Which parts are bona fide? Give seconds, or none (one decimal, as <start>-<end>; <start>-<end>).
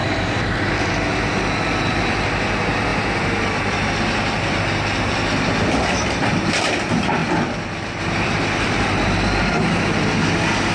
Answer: 0.9-2.9; 6.5-7.2; 10.1-10.7